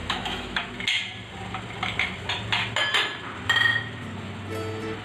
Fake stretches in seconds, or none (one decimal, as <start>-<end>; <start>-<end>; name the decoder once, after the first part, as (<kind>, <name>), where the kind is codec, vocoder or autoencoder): 0.0-0.7 (autoencoder, DAC-VAE)